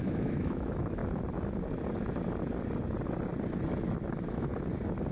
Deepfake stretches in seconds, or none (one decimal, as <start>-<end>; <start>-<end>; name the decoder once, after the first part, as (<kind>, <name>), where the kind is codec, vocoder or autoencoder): 0.0-1.0 (autoencoder, DAC-VAE); 4.1-4.5